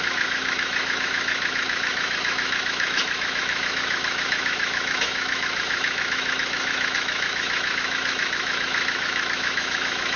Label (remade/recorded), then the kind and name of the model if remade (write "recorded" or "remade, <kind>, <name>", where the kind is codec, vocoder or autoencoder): remade, autoencoder, DAC-VAE